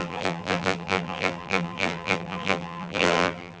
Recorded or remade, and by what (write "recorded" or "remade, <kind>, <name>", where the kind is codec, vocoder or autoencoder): remade, vocoder, BigVGAN v2